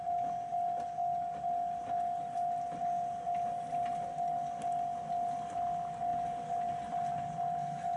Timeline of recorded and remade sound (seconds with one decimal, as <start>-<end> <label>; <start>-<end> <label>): 0.0-8.0 recorded